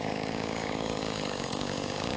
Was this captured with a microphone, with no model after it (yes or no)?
no